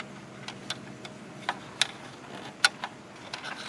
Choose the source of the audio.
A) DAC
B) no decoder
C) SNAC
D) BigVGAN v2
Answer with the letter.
B